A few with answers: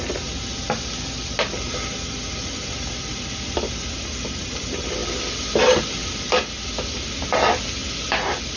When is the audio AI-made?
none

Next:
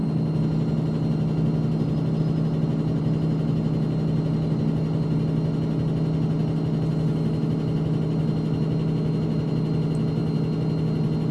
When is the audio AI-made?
none

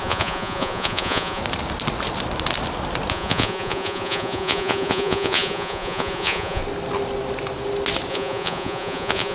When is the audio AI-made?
0.0-1.4; 3.1-6.6; 8.1-9.3

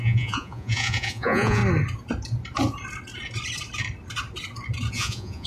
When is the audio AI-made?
0.0-1.6; 4.9-5.5

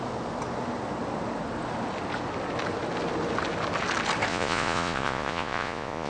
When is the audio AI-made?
4.3-6.1

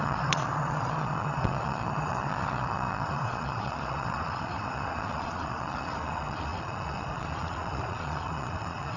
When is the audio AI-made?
0.0-9.0

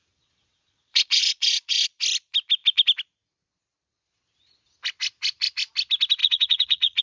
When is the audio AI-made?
0.0-2.0; 6.2-7.0

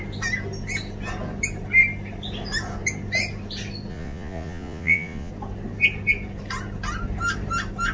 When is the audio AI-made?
3.9-5.3